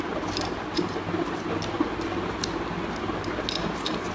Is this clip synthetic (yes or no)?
no